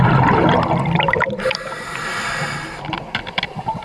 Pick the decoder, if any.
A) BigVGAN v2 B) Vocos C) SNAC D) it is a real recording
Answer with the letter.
D